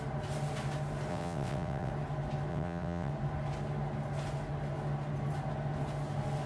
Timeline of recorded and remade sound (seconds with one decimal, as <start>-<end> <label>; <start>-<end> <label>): 0.0-1.1 recorded; 1.1-1.9 remade; 1.9-2.5 recorded; 2.5-3.1 remade; 3.1-6.5 recorded